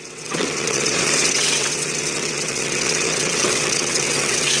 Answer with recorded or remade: remade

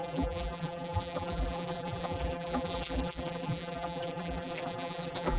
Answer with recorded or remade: remade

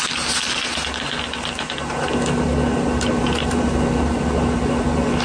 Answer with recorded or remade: recorded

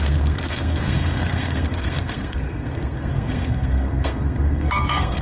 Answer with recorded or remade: remade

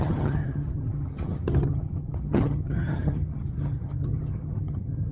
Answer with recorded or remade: remade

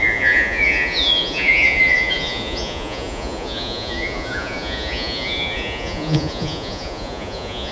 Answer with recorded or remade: remade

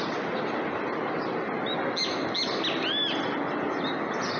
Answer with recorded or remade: recorded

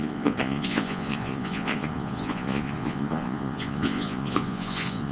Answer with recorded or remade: remade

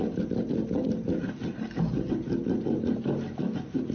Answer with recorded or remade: recorded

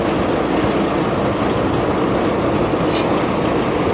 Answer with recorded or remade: recorded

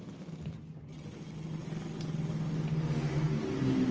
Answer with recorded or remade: recorded